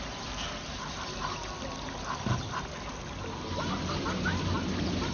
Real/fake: real